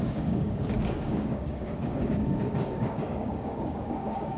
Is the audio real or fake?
fake